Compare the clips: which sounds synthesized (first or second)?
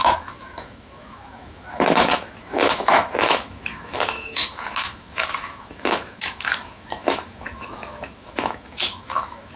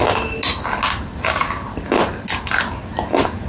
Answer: first